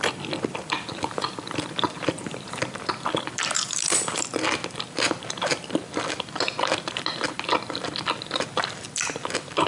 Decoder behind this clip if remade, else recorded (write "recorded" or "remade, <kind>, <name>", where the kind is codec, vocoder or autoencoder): remade, vocoder, BigVGAN v2